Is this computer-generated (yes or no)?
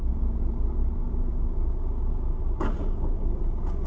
no